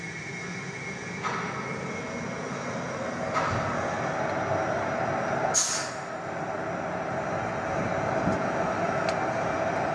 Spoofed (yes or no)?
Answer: no